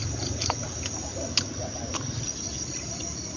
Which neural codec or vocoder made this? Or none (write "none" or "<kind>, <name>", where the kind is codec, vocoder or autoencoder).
none